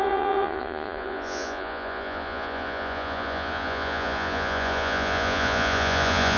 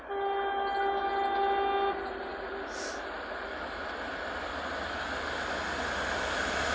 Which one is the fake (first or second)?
first